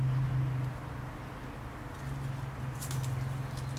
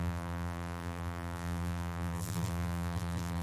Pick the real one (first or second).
first